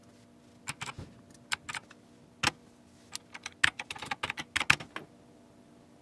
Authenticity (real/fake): real